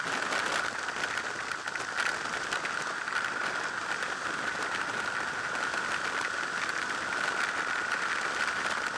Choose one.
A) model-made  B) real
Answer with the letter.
B